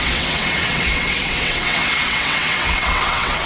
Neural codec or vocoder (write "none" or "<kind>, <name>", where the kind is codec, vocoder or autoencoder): vocoder, WaveNeXt